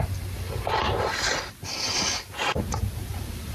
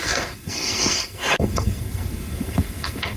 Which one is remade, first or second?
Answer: second